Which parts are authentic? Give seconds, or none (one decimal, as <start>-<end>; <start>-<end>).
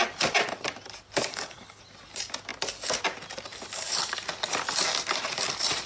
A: 0.0-1.3; 1.8-5.9